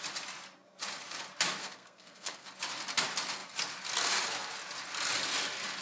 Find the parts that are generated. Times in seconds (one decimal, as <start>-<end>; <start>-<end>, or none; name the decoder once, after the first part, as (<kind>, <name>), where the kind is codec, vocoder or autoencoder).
1.6-2.5 (codec, SNAC)